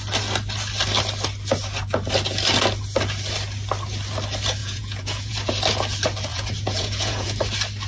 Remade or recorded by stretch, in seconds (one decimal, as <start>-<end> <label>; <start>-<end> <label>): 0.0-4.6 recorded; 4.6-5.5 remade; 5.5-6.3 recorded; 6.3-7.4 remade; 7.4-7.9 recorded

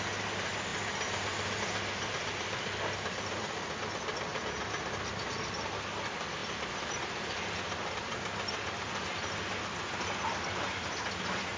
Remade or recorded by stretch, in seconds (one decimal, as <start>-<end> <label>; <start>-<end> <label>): 0.0-11.6 recorded

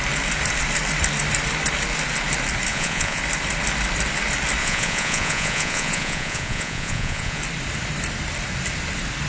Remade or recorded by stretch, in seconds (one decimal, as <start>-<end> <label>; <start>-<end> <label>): 0.0-2.7 recorded; 2.7-3.2 remade; 3.2-4.6 recorded; 4.6-7.4 remade; 7.4-9.3 recorded

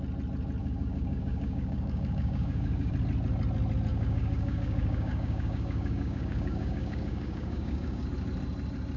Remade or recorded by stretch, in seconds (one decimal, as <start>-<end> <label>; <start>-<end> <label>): 0.0-0.6 recorded; 0.6-2.9 remade; 2.9-3.9 recorded; 3.9-8.1 remade; 8.1-9.0 recorded